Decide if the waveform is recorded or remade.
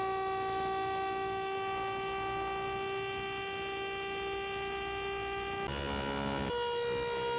recorded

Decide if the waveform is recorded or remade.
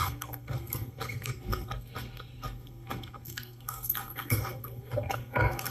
remade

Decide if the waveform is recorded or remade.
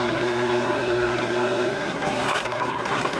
remade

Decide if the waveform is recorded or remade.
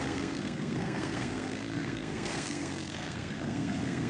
remade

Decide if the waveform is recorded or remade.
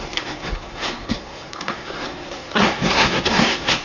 remade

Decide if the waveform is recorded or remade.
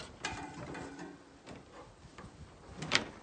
recorded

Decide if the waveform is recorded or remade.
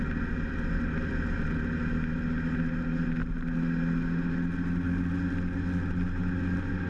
recorded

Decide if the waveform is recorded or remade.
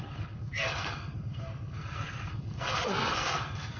remade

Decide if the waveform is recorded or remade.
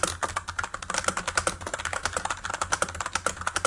recorded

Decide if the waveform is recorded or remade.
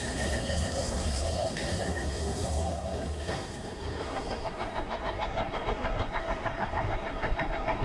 remade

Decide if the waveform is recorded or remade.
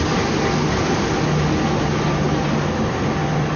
recorded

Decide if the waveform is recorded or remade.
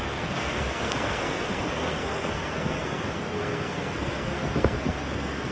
remade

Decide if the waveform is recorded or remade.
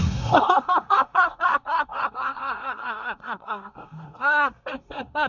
remade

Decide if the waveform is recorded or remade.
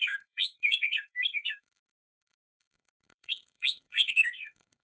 remade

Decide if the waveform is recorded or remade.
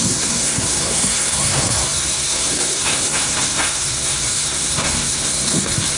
remade